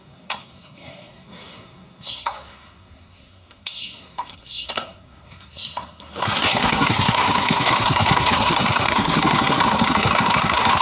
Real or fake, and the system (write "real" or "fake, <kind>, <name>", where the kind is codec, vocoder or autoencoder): fake, codec, SNAC